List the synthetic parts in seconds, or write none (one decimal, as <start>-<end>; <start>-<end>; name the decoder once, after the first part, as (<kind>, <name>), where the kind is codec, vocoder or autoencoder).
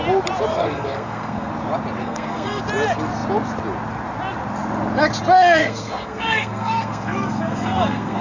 0.5-1.5 (codec, SNAC); 2.0-2.6; 5.6-8.2